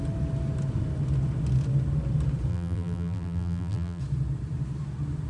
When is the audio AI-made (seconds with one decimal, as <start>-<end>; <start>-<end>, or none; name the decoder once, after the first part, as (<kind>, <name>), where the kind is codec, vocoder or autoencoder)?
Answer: 2.5-4.0 (vocoder, BigVGAN v2)

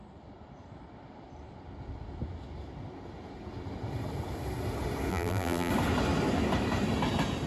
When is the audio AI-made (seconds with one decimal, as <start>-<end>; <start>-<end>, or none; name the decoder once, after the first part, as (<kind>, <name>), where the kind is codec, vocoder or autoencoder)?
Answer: 5.1-5.7 (vocoder, BigVGAN v2)